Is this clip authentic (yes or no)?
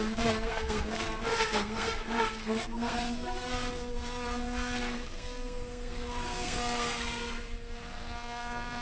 no